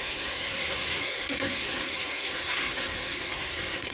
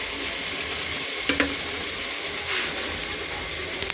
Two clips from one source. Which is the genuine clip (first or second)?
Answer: second